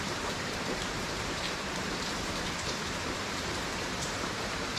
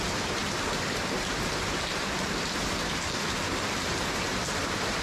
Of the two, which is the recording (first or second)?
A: second